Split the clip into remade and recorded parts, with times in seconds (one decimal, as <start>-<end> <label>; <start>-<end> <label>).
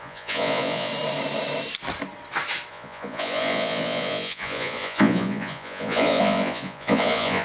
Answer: 0.0-0.9 remade; 0.9-2.7 recorded; 2.7-7.4 remade